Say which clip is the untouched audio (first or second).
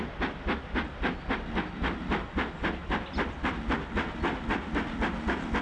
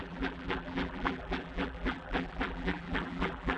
first